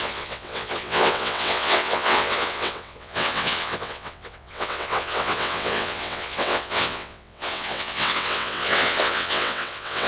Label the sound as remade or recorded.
remade